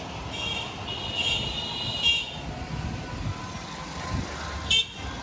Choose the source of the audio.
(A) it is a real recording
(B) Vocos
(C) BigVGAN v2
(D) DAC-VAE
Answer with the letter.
A